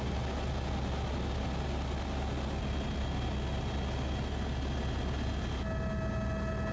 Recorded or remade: recorded